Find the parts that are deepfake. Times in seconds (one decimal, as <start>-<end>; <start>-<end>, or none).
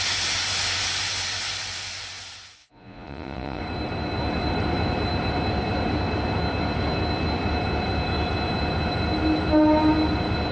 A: 2.6-3.6